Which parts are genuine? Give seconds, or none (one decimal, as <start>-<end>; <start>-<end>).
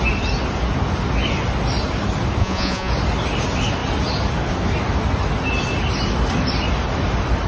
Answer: 0.0-2.4; 2.9-7.5